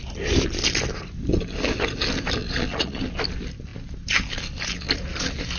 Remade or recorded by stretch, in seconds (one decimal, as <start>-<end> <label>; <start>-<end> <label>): 0.0-2.4 recorded; 2.4-3.0 remade; 3.0-5.6 recorded